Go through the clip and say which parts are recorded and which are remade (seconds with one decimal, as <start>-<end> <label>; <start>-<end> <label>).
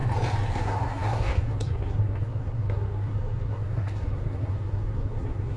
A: 0.0-0.5 recorded; 0.5-5.6 remade